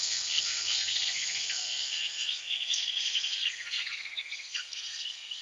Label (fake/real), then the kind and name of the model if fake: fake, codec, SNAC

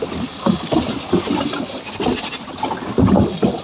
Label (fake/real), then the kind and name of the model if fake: real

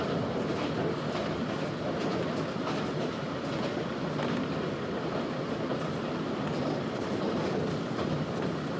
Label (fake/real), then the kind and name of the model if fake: real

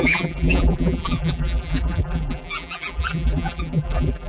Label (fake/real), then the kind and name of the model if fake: fake, vocoder, BigVGAN v2